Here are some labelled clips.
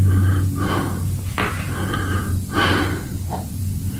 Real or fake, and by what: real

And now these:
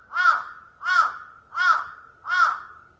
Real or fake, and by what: real